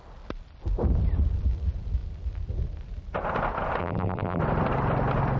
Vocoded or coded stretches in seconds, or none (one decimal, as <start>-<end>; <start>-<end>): 3.8-4.4